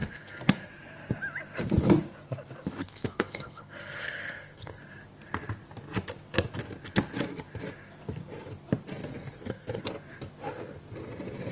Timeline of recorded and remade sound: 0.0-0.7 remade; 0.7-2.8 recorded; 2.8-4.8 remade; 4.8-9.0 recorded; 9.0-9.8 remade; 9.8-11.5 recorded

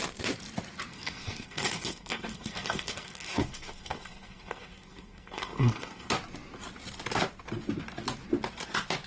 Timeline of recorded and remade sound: 0.0-0.9 recorded; 0.9-6.1 remade; 6.1-9.1 recorded

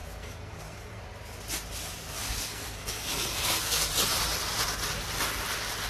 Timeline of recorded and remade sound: 0.0-1.0 remade; 1.0-2.0 recorded; 2.0-3.9 remade; 3.9-5.9 recorded

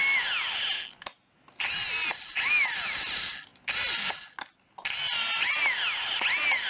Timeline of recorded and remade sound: 0.0-6.7 recorded

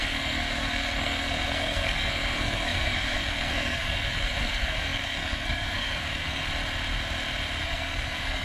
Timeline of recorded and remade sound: 0.0-6.4 remade; 6.4-7.6 recorded; 7.6-8.4 remade